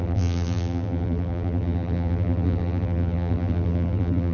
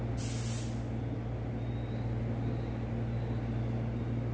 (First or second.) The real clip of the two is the second